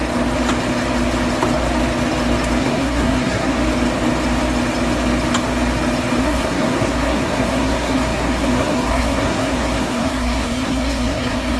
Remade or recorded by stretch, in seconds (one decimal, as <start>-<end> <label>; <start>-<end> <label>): 0.0-2.6 recorded; 2.6-3.6 remade; 3.6-6.2 recorded; 6.2-11.6 remade